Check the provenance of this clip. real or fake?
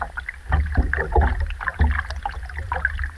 real